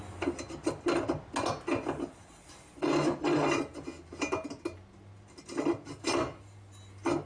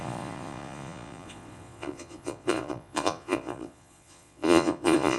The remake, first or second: second